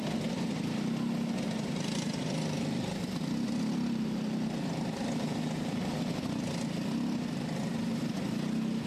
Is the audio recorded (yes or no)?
yes